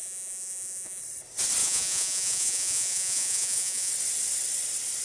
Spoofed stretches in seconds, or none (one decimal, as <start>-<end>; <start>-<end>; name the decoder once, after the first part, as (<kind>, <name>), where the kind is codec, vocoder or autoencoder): 0.0-1.0 (vocoder, Vocos); 1.6-3.9